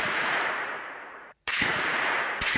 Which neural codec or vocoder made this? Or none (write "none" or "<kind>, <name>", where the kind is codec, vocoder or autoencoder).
vocoder, Vocos